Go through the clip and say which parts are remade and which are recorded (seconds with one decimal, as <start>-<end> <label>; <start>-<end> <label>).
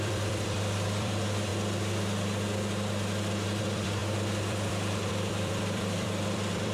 0.0-1.5 remade; 1.5-3.6 recorded; 3.6-6.7 remade